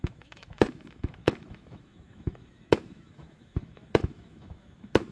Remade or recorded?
remade